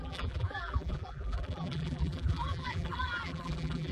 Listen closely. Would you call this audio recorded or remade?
remade